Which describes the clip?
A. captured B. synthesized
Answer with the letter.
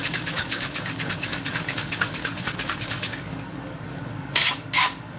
B